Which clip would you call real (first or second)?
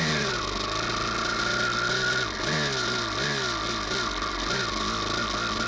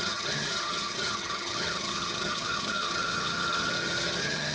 first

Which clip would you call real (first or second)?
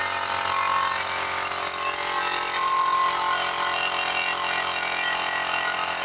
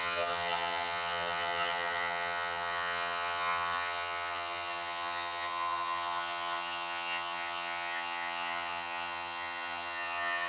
first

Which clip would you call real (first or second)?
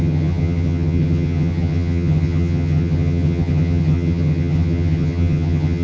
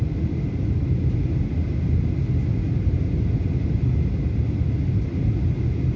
second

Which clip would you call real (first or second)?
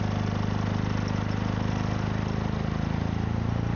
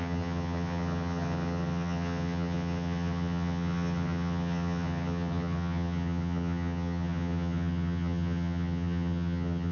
first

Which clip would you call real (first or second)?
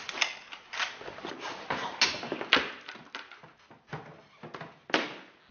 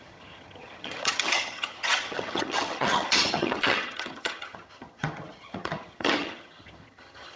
first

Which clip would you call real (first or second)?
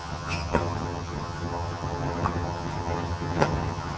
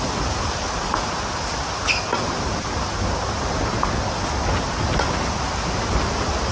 second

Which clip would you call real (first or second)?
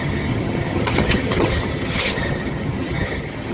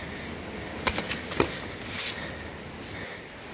second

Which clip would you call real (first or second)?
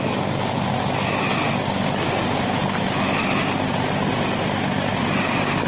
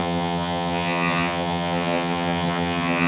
first